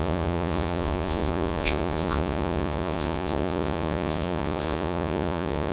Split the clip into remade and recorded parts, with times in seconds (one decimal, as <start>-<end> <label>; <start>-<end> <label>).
0.0-5.7 remade